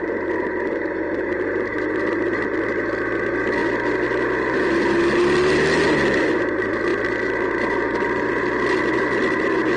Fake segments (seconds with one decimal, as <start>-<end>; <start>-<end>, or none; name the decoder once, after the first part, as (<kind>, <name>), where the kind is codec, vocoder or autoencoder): none